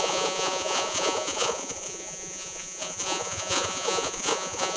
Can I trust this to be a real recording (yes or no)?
no